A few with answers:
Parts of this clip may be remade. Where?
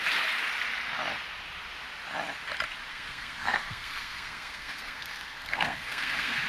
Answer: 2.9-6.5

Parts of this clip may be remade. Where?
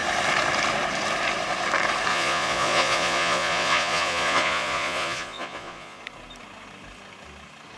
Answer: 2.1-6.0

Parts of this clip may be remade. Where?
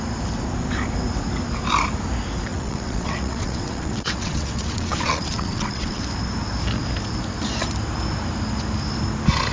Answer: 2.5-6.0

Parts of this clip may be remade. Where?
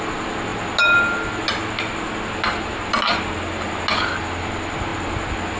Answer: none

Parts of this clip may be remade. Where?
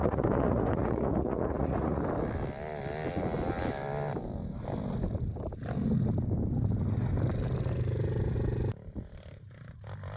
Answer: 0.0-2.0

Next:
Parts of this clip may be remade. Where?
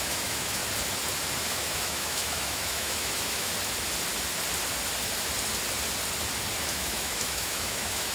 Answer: 0.0-0.6; 1.4-3.5; 6.7-8.1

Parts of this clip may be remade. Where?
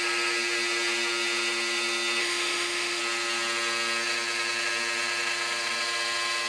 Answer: 2.2-3.0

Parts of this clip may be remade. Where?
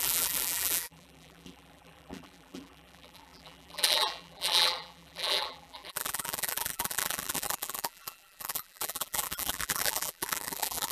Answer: 0.0-10.9